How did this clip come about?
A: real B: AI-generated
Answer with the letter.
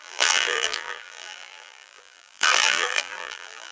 B